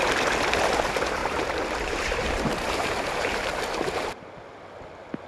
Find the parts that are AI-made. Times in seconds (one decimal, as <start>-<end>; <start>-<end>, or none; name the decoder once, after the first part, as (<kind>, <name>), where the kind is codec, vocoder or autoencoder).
1.2-4.3 (vocoder, BigVGAN v2)

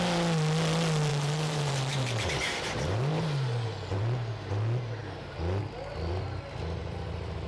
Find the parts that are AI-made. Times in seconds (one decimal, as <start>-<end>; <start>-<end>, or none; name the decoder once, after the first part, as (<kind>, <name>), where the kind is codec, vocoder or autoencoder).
1.1-4.0 (vocoder, BigVGAN v2); 6.8-7.5

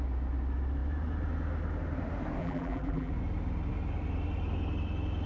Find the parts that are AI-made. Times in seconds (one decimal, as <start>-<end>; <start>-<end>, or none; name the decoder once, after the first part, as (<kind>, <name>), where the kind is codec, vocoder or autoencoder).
2.4-3.1 (vocoder, BigVGAN v2)

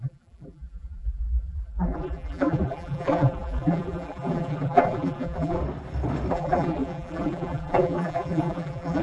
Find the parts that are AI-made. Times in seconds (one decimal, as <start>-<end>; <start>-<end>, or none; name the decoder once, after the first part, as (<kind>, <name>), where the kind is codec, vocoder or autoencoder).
0.0-5.6 (vocoder, BigVGAN v2); 6.3-9.0

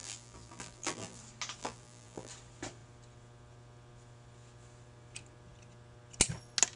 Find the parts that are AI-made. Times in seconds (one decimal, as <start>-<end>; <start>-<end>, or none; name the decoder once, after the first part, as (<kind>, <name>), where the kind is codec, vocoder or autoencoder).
0.0-1.2 (vocoder, BigVGAN v2); 1.6-2.3

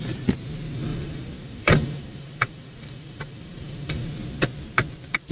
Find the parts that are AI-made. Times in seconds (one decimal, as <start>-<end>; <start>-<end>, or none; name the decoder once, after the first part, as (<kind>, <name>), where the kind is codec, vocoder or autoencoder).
0.9-4.1 (vocoder, BigVGAN v2)